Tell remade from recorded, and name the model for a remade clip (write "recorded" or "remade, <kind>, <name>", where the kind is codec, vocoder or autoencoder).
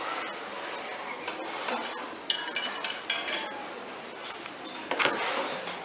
recorded